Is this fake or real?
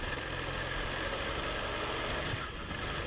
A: real